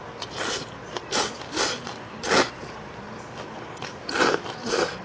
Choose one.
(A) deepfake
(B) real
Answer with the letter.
B